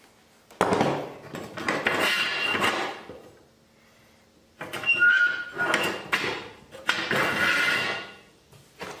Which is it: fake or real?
real